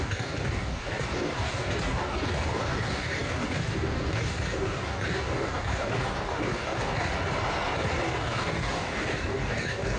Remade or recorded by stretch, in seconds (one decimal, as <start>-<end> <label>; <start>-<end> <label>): 0.0-7.1 remade; 7.1-8.0 recorded; 8.0-10.0 remade